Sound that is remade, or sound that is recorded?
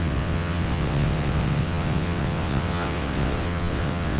remade